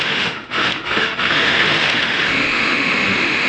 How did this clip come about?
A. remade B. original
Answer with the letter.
A